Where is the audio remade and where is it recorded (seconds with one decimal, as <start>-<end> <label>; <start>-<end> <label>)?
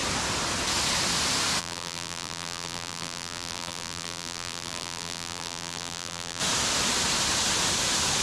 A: 0.0-1.6 recorded; 1.6-6.4 remade; 6.4-8.2 recorded